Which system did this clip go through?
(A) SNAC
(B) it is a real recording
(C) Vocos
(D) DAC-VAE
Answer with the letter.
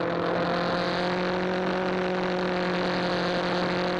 B